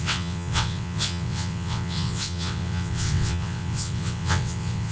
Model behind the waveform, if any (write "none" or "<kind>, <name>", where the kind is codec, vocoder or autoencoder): vocoder, WaveNeXt